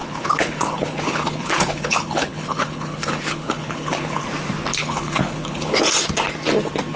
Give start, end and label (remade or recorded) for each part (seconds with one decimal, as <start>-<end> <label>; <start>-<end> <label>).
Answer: 0.0-4.2 remade; 4.2-4.7 recorded; 4.7-5.8 remade; 5.8-7.0 recorded